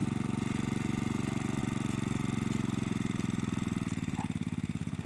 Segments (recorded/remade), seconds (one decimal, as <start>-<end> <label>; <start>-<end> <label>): 0.0-5.1 recorded